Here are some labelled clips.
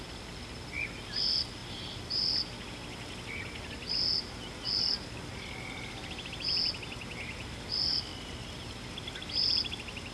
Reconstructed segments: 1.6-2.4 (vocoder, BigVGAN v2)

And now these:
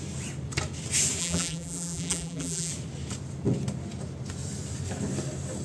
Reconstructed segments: 1.2-2.7 (vocoder, BigVGAN v2)

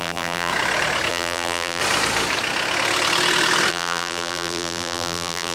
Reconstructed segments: 0.0-0.5 (vocoder, BigVGAN v2); 1.1-1.8; 3.7-5.5

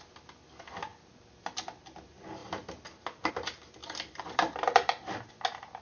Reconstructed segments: 3.8-5.3 (vocoder, BigVGAN v2)

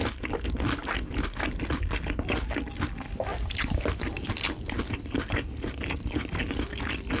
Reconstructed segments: 3.3-4.3 (vocoder, BigVGAN v2)

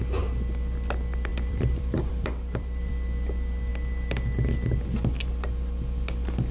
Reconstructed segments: 1.3-2.9 (vocoder, BigVGAN v2)